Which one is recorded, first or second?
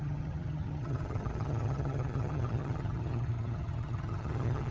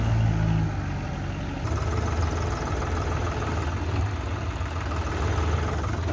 second